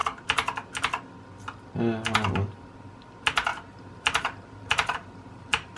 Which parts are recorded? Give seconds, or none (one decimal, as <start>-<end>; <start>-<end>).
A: 0.0-3.5